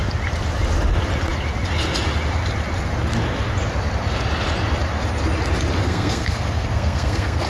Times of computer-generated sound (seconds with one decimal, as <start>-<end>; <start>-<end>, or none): 5.8-7.5